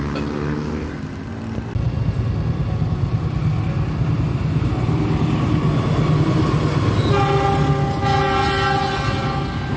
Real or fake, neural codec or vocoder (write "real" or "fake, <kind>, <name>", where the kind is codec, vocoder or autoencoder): real